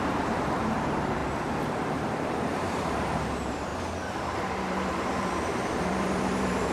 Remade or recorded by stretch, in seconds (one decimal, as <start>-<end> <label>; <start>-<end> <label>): 0.0-1.2 remade; 1.2-1.8 recorded; 1.8-3.7 remade; 3.7-5.2 recorded; 5.2-6.7 remade